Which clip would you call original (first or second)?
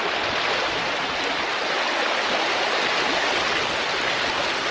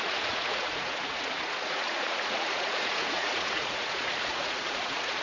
first